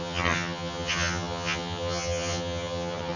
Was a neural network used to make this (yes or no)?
yes